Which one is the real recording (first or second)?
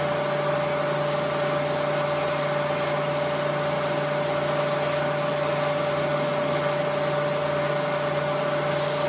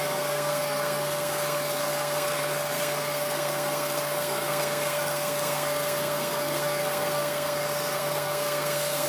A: first